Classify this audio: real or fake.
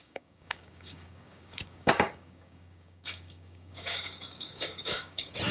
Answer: fake